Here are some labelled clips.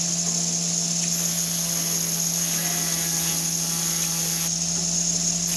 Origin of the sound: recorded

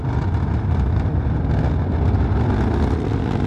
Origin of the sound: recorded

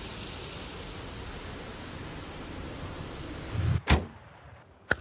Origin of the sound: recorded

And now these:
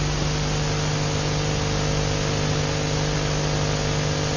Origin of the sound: recorded